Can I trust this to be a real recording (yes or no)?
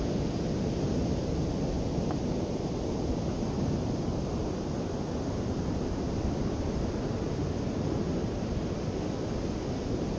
yes